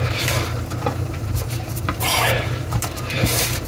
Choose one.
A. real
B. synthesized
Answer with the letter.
B